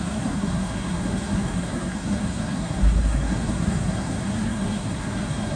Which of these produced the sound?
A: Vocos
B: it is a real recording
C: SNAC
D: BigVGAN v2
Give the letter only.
C